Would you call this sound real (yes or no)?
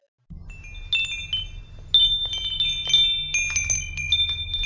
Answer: yes